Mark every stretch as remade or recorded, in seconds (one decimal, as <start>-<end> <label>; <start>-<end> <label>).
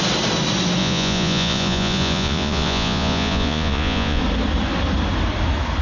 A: 0.0-0.8 recorded; 0.8-4.2 remade; 4.2-5.8 recorded